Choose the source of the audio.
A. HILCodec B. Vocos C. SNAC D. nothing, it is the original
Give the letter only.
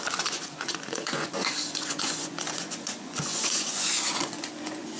B